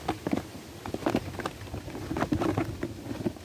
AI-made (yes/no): no